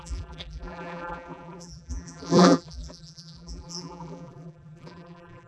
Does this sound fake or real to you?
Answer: fake